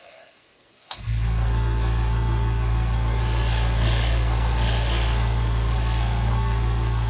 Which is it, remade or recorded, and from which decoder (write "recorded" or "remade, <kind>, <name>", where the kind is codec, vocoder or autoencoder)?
remade, codec, SNAC